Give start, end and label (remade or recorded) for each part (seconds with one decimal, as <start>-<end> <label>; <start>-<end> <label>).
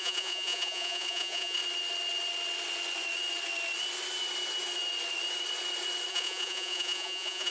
0.0-1.6 remade; 1.6-6.1 recorded; 6.1-7.5 remade